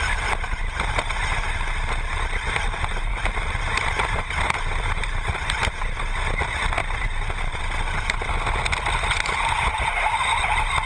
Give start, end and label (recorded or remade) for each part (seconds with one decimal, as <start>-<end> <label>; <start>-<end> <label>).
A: 0.0-3.1 recorded; 3.1-6.0 remade; 6.0-6.8 recorded; 6.8-7.6 remade; 7.6-10.9 recorded